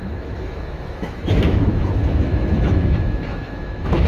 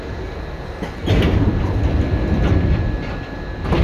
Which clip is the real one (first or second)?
second